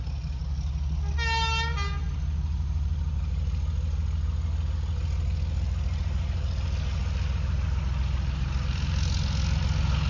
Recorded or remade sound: recorded